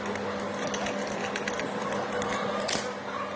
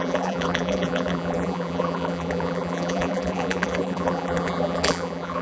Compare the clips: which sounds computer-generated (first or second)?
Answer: second